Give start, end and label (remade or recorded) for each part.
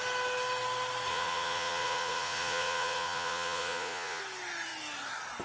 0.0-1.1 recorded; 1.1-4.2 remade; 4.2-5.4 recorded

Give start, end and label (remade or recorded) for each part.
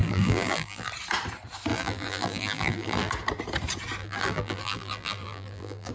0.0-0.9 remade; 0.9-1.7 recorded; 1.7-3.1 remade; 3.1-4.0 recorded; 4.0-5.9 remade